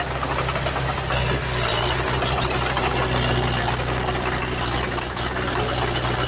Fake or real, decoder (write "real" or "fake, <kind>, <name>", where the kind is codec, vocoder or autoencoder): real